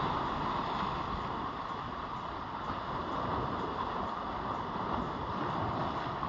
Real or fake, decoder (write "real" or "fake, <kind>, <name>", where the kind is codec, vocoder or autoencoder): real